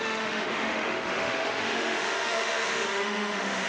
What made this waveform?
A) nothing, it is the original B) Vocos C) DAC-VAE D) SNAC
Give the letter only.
C